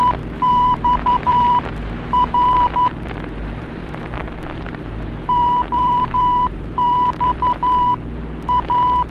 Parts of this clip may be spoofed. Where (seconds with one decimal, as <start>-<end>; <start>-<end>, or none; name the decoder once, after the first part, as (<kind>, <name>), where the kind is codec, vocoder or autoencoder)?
0.0-7.9 (vocoder, BigVGAN v2)